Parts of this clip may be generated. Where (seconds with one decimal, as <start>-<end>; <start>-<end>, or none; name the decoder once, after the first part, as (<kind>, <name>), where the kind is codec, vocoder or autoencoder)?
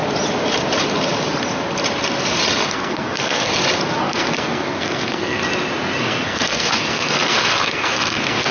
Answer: 2.7-3.5 (codec, SNAC); 4.0-5.4; 6.0-8.5